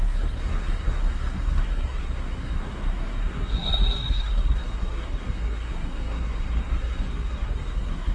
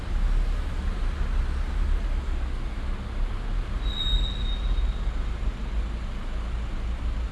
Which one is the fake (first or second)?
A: first